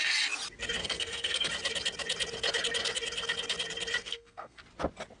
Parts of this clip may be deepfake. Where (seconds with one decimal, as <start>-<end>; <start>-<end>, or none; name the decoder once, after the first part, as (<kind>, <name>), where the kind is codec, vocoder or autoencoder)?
0.8-1.5 (codec, SNAC); 4.0-4.6

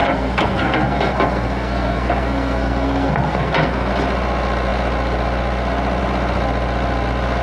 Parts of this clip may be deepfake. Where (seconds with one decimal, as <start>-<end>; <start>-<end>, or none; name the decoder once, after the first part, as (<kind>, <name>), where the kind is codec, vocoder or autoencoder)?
0.0-3.9 (codec, SNAC)